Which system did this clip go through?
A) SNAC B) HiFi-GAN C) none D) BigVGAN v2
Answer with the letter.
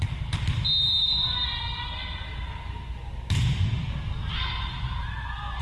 C